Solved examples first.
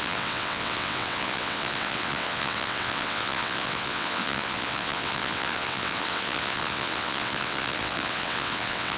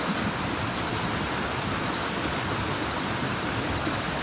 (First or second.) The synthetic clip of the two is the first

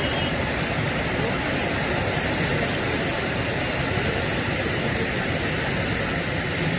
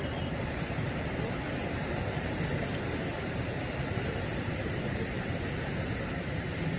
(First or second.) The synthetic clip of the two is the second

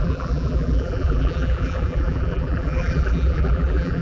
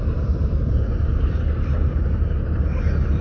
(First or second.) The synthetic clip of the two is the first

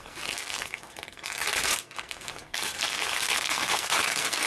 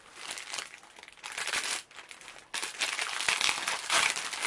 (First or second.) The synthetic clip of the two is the first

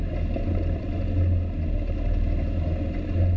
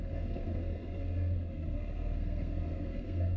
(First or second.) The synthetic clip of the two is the second